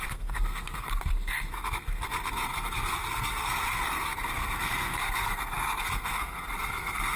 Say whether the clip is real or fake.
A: fake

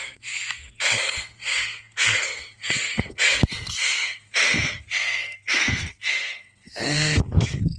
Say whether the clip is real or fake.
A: fake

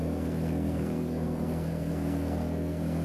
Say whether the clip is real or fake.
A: fake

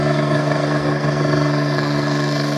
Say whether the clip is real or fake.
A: fake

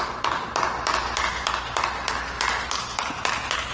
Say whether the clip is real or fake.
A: real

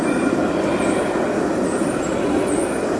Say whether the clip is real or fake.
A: real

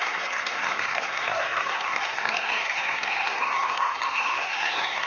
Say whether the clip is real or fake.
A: fake